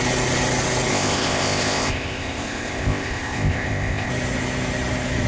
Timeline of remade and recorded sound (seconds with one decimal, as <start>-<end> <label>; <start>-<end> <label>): 0.0-0.9 recorded; 0.9-4.1 remade; 4.1-5.3 recorded